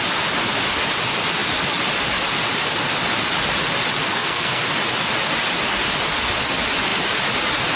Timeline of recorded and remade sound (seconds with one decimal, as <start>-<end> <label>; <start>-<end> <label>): 0.0-4.0 recorded; 4.0-4.6 remade; 4.6-7.8 recorded